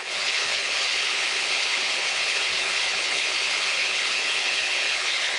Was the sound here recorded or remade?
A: remade